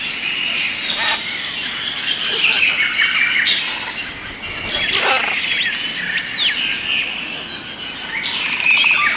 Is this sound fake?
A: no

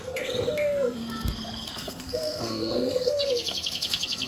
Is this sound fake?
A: yes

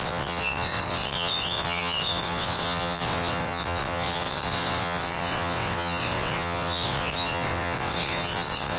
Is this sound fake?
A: yes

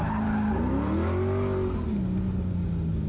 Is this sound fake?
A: no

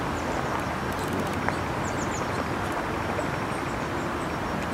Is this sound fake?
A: no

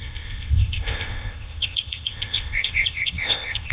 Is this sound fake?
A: yes